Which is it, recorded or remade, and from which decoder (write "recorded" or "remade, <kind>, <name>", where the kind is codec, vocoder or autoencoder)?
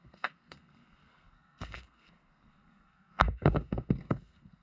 remade, codec, SNAC